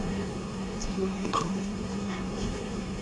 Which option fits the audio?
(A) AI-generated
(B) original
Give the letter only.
A